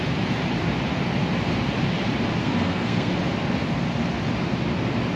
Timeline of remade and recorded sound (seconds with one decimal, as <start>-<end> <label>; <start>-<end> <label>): 0.0-2.4 recorded; 2.4-3.1 remade; 3.1-5.2 recorded